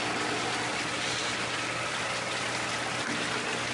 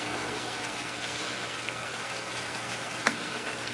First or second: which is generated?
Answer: second